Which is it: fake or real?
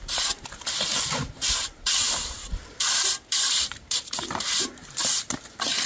fake